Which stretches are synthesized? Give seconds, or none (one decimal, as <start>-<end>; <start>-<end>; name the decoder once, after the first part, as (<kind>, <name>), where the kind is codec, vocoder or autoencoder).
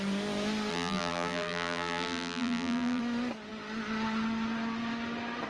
0.7-3.0 (vocoder, BigVGAN v2)